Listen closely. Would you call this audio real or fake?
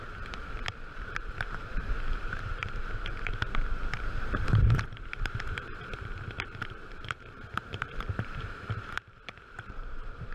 fake